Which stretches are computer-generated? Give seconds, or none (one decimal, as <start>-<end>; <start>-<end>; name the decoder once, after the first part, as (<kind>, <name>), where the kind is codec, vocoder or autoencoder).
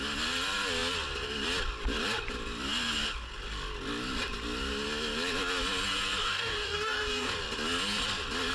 6.2-7.3 (codec, DAC)